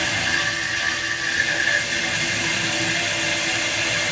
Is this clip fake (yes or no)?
no